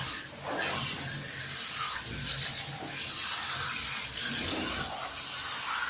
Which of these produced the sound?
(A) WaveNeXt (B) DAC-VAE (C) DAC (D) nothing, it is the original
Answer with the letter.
D